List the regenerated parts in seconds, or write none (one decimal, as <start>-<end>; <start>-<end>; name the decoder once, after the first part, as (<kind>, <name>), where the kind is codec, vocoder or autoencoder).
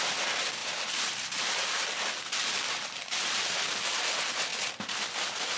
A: 0.6-3.6 (vocoder, BigVGAN v2); 4.5-5.6